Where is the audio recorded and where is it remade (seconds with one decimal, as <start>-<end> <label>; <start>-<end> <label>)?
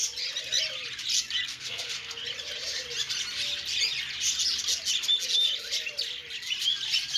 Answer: 0.0-1.5 recorded; 1.5-2.2 remade; 2.2-7.2 recorded